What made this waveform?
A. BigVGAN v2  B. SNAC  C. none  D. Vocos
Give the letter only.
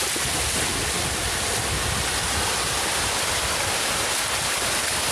C